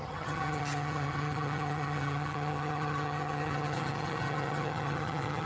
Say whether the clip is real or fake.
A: fake